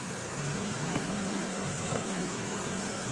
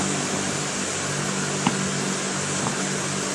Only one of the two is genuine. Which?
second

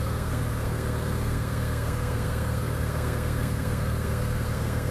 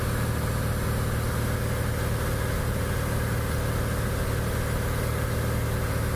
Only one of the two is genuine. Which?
second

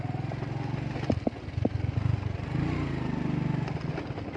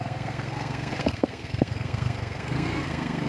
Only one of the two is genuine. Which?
first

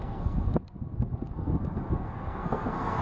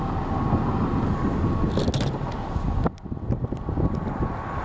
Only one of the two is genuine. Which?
second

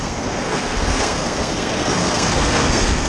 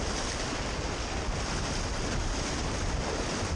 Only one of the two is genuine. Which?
second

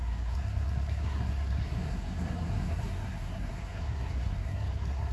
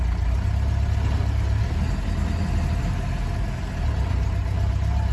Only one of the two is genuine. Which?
second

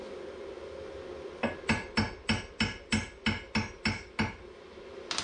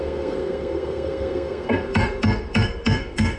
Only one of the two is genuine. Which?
first